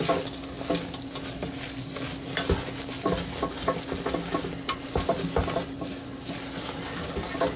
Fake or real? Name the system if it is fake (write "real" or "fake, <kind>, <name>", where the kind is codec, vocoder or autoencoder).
real